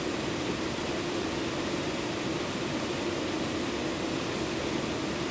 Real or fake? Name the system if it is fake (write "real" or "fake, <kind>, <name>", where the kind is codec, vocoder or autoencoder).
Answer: real